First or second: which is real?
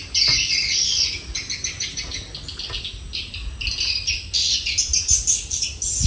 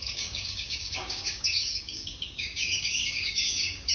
first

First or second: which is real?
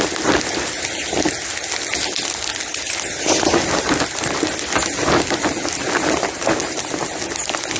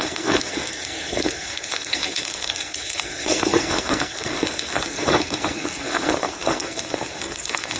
first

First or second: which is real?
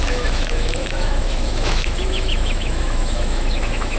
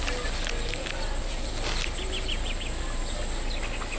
second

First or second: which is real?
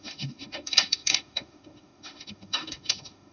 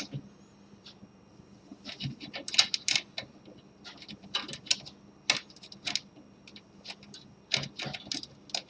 second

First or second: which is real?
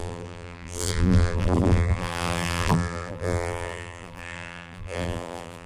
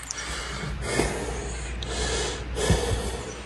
second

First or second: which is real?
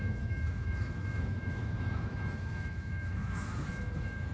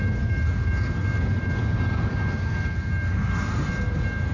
second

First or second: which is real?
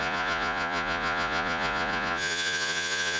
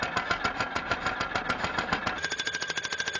second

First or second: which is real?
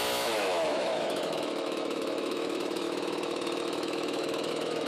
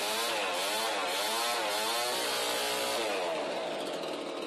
second